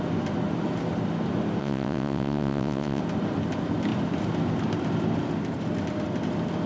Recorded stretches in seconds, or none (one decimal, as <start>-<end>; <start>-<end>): 0.0-1.6; 3.0-6.7